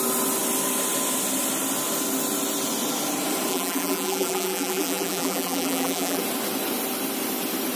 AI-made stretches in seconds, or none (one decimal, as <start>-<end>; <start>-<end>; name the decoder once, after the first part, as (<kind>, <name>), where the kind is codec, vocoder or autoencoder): 3.5-6.2 (vocoder, BigVGAN v2)